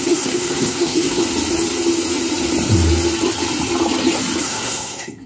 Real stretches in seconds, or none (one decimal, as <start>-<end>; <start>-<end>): 1.2-4.4